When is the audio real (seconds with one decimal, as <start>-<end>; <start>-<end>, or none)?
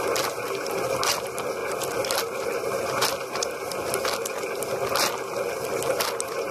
0.0-6.5